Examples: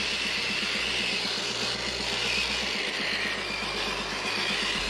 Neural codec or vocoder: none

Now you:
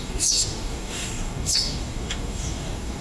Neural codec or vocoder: codec, DAC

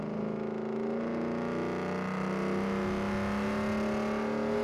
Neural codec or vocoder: none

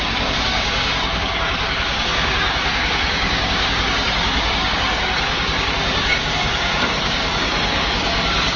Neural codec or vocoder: codec, DAC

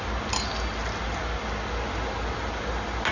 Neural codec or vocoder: none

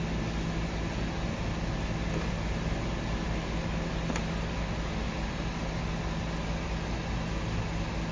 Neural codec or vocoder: none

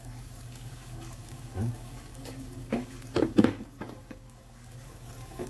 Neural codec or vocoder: codec, DAC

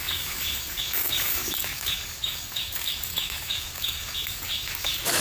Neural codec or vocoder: codec, DAC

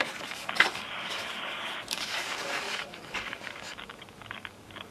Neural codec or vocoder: codec, DAC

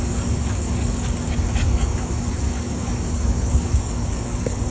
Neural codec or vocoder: codec, DAC